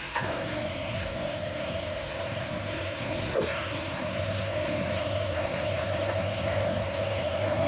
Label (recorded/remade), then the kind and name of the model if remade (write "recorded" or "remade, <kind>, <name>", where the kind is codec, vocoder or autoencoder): remade, codec, SNAC